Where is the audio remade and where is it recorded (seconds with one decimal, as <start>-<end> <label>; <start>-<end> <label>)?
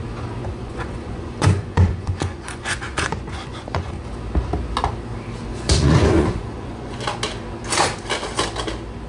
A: 0.0-0.4 recorded; 0.4-4.0 remade; 4.0-5.5 recorded; 5.5-7.1 remade; 7.1-9.1 recorded